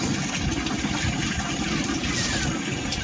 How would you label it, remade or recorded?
recorded